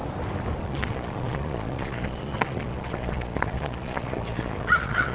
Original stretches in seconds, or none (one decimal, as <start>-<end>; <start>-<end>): 0.0-0.6